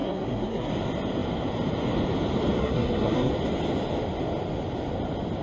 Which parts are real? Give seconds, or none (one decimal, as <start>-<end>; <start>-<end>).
0.7-2.6; 3.3-5.4